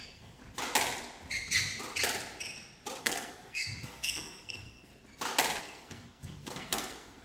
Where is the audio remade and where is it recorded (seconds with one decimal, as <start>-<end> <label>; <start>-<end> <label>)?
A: 0.0-0.4 remade; 0.4-3.0 recorded; 3.0-4.9 remade; 4.9-5.6 recorded; 5.6-7.2 remade